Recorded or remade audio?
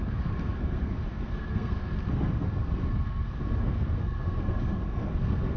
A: remade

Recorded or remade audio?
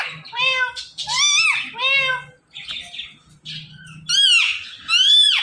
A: recorded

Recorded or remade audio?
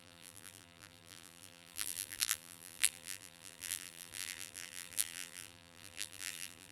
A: remade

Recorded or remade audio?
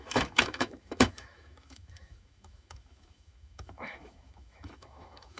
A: remade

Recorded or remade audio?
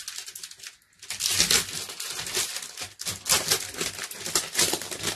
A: recorded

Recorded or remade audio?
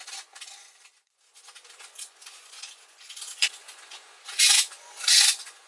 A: remade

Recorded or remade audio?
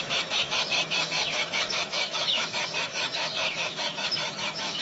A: remade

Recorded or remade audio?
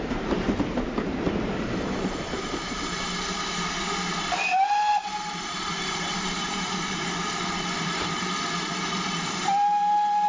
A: remade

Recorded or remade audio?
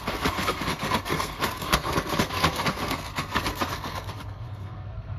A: remade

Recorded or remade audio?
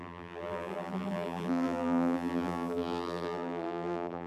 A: remade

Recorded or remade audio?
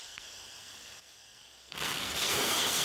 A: remade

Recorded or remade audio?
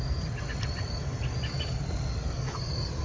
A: recorded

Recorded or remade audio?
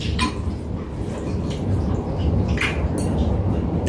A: recorded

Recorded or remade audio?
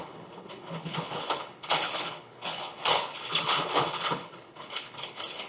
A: remade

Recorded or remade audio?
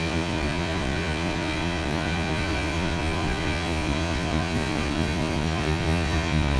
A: remade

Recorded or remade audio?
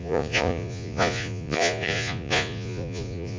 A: remade